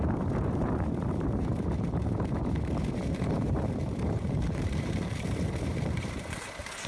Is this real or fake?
fake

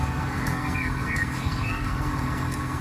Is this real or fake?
fake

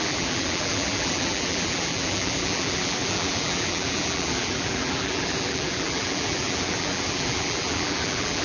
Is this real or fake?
fake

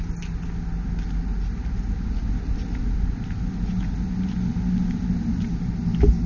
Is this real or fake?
real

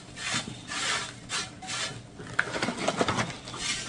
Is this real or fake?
real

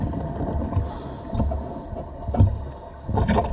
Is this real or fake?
real